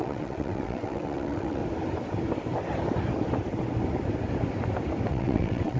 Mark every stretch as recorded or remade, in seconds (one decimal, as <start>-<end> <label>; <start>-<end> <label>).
0.0-1.6 remade; 1.6-5.1 recorded; 5.1-5.8 remade